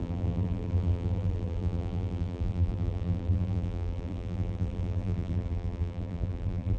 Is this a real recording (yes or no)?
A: no